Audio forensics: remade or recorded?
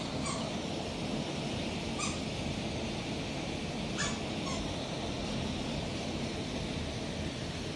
recorded